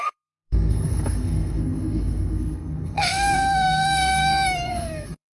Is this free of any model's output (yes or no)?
no